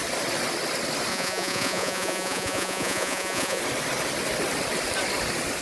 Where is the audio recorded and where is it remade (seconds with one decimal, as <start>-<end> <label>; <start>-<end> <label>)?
0.0-1.1 recorded; 1.1-3.6 remade; 3.6-5.6 recorded